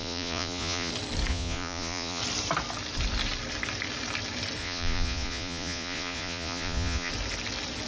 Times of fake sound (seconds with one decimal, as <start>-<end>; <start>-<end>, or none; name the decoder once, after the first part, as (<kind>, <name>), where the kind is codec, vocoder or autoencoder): 0.0-0.9 (vocoder, Vocos); 1.3-2.2; 4.6-7.1